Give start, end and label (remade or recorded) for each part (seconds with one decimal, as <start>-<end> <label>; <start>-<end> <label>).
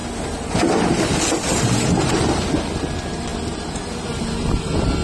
0.0-1.5 recorded; 1.5-2.4 remade; 2.4-5.0 recorded